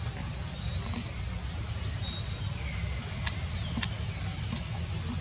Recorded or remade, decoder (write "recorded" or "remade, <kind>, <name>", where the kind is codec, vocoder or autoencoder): recorded